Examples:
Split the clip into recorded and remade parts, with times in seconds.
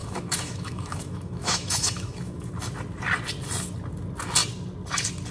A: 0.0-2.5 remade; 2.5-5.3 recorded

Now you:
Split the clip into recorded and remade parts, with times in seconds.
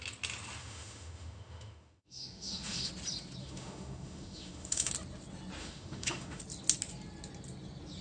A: 0.0-0.6 recorded; 0.6-2.9 remade; 2.9-3.4 recorded; 3.4-4.9 remade; 4.9-5.6 recorded; 5.6-6.4 remade; 6.4-8.0 recorded